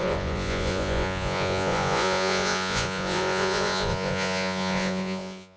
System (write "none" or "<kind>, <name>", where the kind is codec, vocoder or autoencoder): vocoder, Vocos